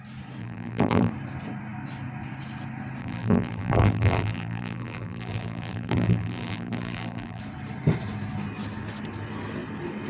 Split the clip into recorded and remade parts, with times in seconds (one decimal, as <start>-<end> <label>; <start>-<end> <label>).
0.0-0.4 recorded; 0.4-1.1 remade; 1.1-3.0 recorded; 3.0-7.4 remade; 7.4-10.1 recorded